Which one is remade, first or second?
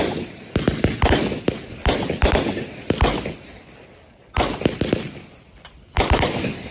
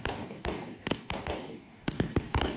second